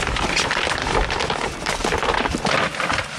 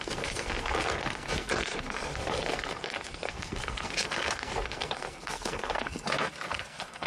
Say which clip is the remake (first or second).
second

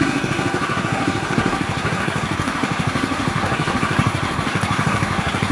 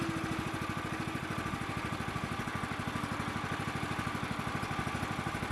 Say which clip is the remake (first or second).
first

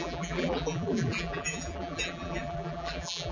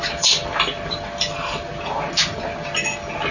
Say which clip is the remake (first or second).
first